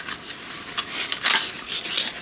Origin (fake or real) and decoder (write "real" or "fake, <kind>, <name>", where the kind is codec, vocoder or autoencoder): real